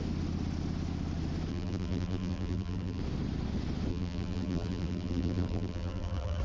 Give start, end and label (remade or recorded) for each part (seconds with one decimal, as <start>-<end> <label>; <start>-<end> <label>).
0.0-1.5 recorded; 1.5-3.0 remade; 3.0-3.9 recorded; 3.9-6.4 remade